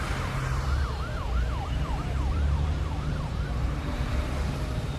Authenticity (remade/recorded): remade